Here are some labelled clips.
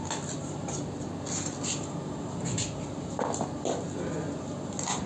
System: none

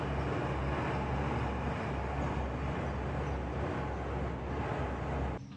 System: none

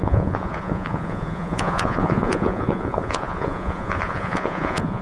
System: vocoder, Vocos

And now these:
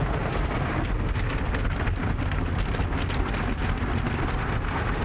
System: none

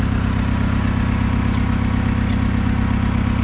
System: none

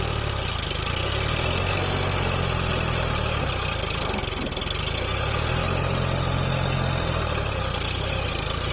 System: none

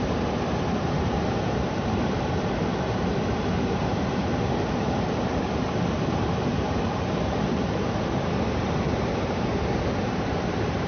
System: vocoder, BigVGAN v2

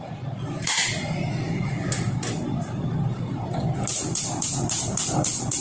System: none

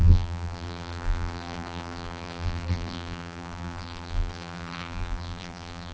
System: vocoder, BigVGAN v2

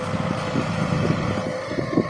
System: none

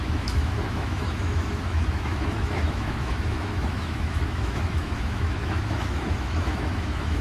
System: autoencoder, DAC-VAE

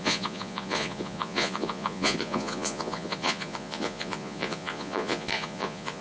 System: vocoder, Vocos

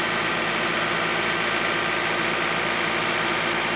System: none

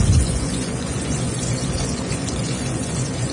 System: vocoder, Vocos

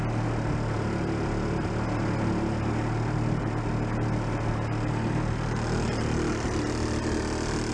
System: none